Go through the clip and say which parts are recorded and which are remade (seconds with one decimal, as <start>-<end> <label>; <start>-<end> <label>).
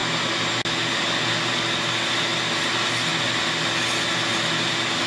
0.0-5.1 recorded